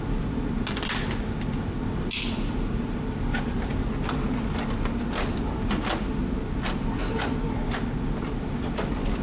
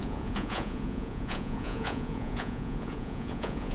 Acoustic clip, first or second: first